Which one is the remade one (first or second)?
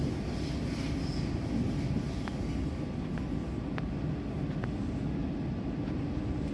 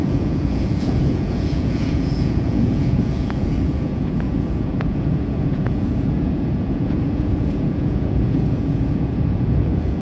second